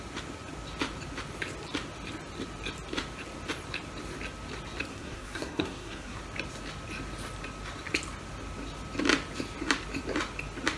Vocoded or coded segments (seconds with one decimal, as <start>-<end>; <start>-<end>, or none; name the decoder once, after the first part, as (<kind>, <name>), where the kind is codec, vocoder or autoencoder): 4.9-6.2 (codec, SNAC)